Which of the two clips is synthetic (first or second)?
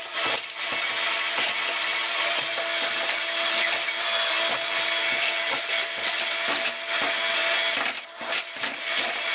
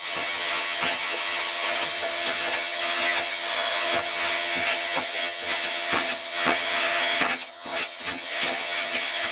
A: second